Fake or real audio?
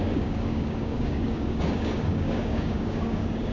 fake